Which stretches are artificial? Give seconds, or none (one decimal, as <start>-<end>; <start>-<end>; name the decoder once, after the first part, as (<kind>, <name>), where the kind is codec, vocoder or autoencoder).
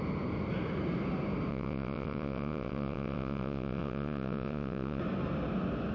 1.5-5.0 (vocoder, WaveNeXt)